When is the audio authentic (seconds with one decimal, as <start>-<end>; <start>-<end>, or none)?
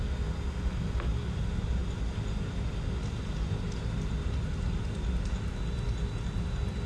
0.0-6.9